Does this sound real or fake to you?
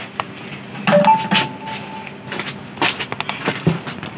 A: real